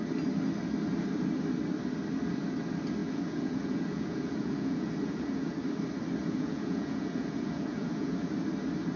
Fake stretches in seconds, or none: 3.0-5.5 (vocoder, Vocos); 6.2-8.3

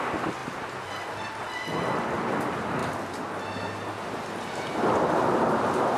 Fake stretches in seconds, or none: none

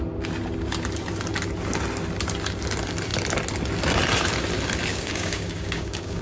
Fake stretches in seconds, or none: 4.9-6.2 (codec, DAC)

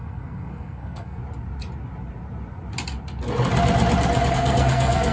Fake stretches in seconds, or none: 0.0-1.2 (codec, SNAC); 4.3-5.1